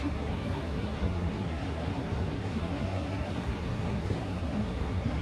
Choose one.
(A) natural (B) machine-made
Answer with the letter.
B